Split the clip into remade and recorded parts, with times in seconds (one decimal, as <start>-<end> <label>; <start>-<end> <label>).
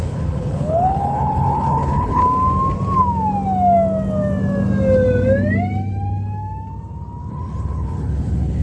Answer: 0.0-2.2 remade; 2.2-7.3 recorded; 7.3-8.6 remade